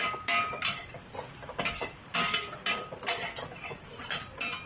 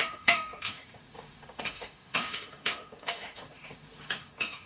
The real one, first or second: first